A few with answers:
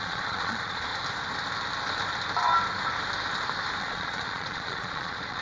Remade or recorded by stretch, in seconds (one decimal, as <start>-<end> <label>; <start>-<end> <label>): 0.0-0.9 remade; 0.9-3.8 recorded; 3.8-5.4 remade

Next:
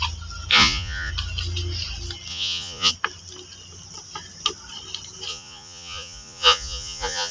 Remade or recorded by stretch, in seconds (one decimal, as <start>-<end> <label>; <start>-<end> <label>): 0.0-0.5 recorded; 0.5-1.1 remade; 1.1-2.3 recorded; 2.3-2.9 remade; 2.9-5.3 recorded; 5.3-7.3 remade

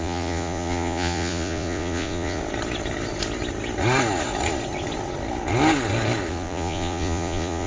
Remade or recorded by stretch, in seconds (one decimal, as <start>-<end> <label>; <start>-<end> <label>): 0.0-2.4 remade; 2.4-6.3 recorded; 6.3-7.7 remade